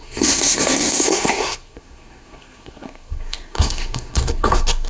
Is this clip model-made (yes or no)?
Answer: yes